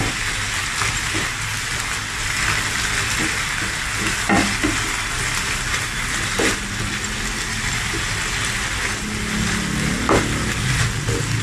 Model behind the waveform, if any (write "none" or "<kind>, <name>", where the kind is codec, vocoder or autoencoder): none